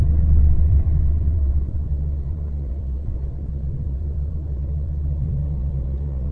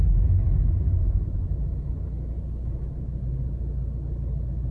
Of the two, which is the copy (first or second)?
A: first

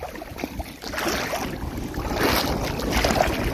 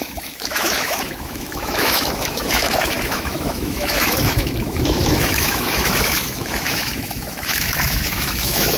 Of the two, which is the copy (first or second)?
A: second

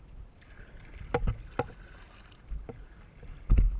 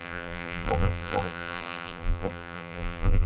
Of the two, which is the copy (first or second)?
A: second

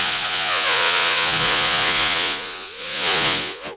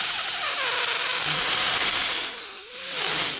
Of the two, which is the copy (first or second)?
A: first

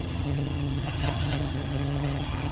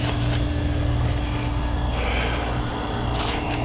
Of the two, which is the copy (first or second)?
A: first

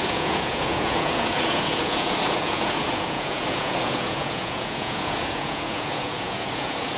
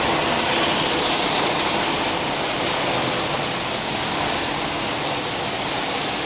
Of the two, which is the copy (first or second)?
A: first